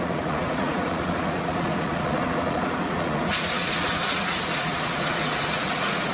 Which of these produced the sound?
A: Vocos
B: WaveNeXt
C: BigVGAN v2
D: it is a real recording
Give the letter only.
A